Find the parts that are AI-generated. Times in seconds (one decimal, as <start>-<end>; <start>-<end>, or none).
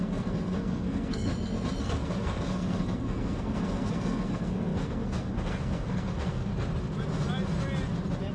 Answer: 0.0-1.3; 1.8-6.5